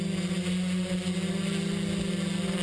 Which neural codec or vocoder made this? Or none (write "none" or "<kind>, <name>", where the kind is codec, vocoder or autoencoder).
none